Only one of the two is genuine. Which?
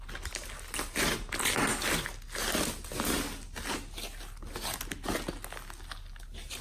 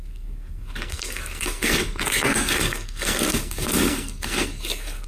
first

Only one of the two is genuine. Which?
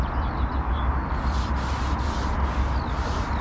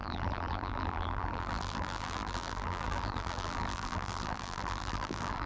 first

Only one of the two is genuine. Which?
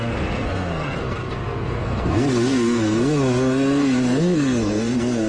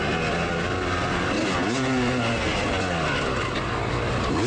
second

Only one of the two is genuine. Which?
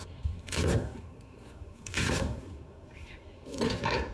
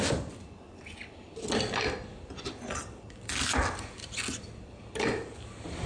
second